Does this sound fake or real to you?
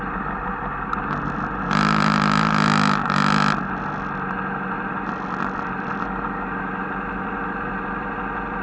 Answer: real